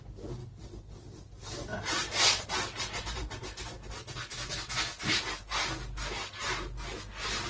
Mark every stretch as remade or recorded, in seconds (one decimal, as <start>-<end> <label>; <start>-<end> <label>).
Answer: 0.0-7.5 recorded